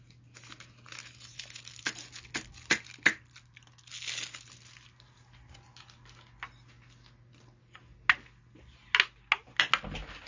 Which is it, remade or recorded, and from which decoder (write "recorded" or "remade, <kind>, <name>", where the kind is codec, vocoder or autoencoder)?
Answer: recorded